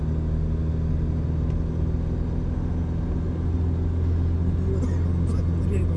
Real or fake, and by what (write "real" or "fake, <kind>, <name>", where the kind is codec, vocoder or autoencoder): real